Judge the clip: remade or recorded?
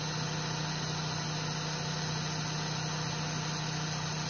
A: recorded